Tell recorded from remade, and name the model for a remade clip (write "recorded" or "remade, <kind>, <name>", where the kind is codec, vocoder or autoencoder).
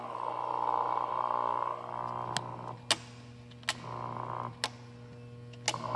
recorded